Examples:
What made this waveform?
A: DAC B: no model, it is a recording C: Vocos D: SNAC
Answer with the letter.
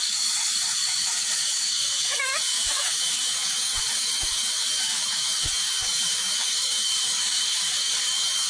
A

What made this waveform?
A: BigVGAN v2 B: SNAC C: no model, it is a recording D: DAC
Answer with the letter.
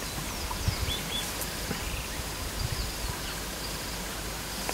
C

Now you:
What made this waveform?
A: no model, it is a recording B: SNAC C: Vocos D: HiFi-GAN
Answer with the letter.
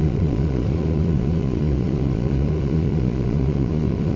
C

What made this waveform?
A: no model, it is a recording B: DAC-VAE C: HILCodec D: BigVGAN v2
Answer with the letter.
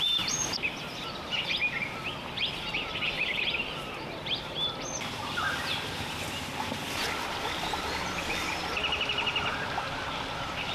D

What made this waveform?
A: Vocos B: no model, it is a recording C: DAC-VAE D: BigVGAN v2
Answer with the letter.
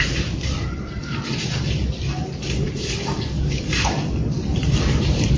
B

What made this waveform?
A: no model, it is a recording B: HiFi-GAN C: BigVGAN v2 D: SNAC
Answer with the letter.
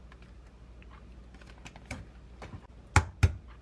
A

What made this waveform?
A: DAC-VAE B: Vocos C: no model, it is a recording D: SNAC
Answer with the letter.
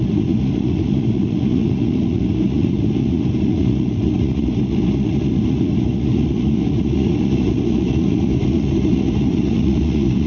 B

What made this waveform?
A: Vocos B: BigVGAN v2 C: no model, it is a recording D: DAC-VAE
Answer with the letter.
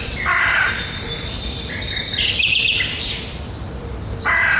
C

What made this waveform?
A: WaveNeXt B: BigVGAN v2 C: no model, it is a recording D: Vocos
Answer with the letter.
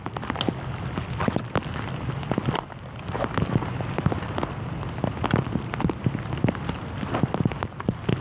C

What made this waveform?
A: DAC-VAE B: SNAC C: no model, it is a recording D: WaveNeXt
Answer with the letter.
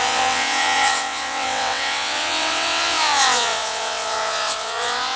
D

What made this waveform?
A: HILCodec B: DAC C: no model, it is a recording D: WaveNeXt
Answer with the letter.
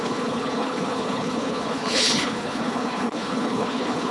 A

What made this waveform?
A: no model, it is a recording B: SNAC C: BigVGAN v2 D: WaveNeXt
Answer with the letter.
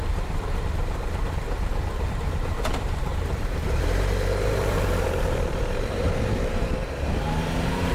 C